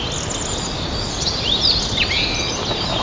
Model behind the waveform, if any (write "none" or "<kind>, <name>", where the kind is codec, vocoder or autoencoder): none